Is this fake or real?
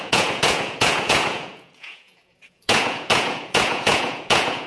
fake